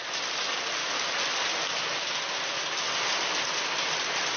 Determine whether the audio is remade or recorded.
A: recorded